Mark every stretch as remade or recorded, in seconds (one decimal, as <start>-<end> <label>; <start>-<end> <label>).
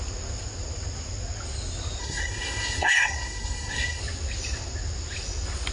0.0-2.0 recorded; 2.0-4.0 remade; 4.0-5.7 recorded